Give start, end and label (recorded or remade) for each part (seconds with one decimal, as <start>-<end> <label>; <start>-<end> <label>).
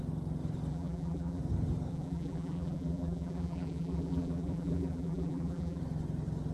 0.0-0.7 recorded; 0.7-1.4 remade; 1.4-1.9 recorded; 1.9-5.8 remade; 5.8-6.5 recorded